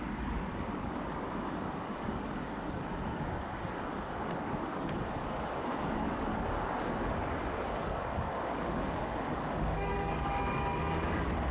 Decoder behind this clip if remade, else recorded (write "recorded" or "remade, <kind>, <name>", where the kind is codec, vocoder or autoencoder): remade, codec, DAC